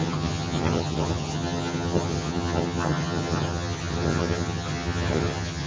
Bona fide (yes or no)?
no